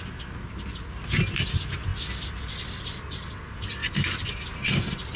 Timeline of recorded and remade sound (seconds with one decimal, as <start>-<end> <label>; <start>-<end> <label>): 0.0-3.8 recorded; 3.8-4.3 remade; 4.3-5.2 recorded